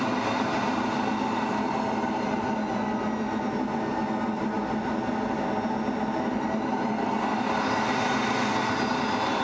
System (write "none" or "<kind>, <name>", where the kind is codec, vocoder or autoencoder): none